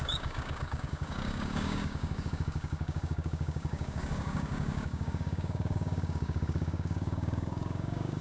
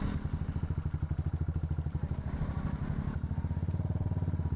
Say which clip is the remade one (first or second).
first